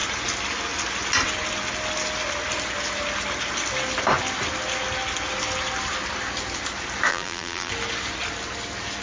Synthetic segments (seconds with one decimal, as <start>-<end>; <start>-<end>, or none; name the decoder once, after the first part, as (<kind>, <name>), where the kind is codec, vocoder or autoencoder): 7.1-7.7 (vocoder, BigVGAN v2)